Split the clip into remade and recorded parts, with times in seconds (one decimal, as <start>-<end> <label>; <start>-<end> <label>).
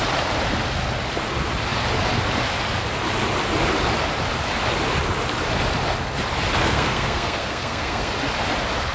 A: 0.0-6.6 recorded; 6.6-8.1 remade; 8.1-8.9 recorded